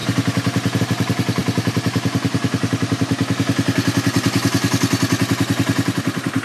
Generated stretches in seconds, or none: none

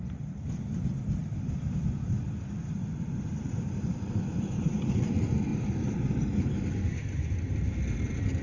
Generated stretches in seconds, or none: 0.0-5.5 (vocoder, BigVGAN v2); 6.2-7.0; 7.8-8.4

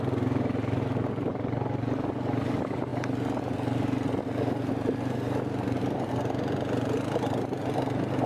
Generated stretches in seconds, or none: none

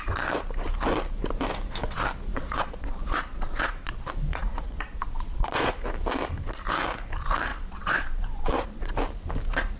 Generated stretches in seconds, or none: 2.3-3.9 (vocoder, Vocos); 4.4-5.7; 7.5-8.9

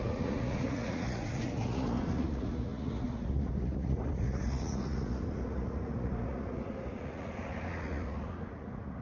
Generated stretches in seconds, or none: 0.0-9.0 (vocoder, Vocos)

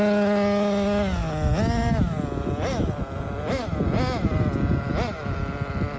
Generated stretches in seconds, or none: none

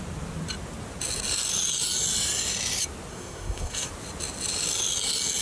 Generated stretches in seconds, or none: 3.1-3.9 (codec, SNAC)

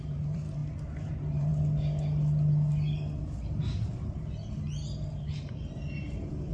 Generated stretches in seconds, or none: 0.0-0.6 (vocoder, BigVGAN v2); 1.1-1.5; 5.4-6.5